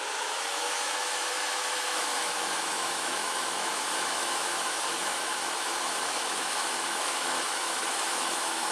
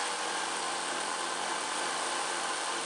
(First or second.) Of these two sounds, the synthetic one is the first